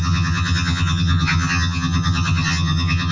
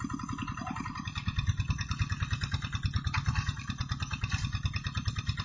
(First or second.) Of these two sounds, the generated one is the first